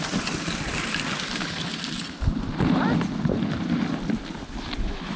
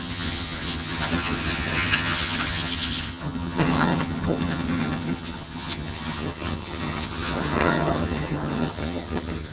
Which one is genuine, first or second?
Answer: first